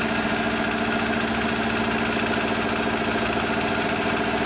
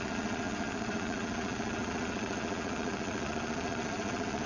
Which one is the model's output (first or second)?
second